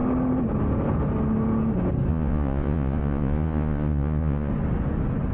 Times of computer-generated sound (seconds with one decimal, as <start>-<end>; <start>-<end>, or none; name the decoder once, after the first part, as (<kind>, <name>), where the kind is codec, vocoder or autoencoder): 2.1-4.5 (vocoder, Vocos)